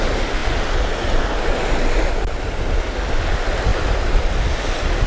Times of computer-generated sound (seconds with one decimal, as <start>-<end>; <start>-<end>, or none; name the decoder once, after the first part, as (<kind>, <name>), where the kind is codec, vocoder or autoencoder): 3.7-4.2 (vocoder, BigVGAN v2)